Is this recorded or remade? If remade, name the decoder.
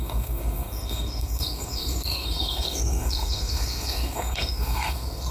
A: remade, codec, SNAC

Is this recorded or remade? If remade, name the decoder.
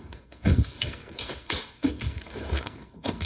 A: remade, codec, SNAC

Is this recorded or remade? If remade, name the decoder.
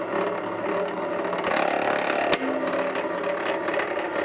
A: recorded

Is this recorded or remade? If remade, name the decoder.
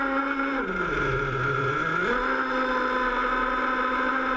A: recorded